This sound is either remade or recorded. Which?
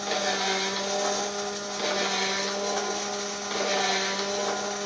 recorded